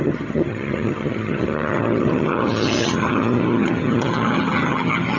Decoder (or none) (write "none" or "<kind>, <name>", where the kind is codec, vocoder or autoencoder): vocoder, HiFi-GAN